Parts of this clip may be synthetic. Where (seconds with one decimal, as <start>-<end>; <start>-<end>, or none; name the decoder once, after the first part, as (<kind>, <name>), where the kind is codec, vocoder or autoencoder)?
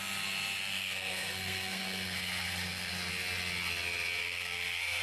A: 0.7-2.9 (codec, SNAC); 4.2-5.0